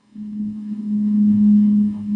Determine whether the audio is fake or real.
fake